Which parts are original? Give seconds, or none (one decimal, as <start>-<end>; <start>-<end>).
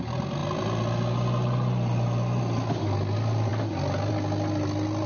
0.0-5.1